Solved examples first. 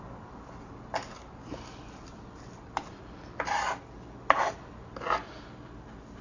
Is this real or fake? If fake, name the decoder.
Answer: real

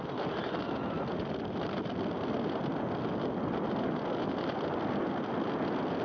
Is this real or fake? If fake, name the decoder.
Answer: real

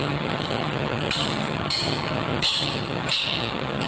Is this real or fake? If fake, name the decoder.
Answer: fake, vocoder, HiFi-GAN